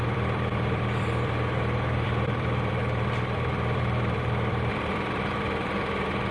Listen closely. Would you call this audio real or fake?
fake